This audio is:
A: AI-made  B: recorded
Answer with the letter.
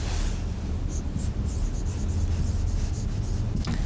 B